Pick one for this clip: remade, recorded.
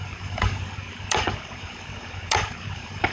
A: remade